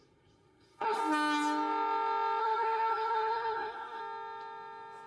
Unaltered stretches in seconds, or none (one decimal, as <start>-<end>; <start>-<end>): 1.0-2.4; 4.0-5.1